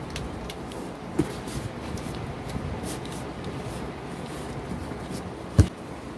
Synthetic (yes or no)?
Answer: no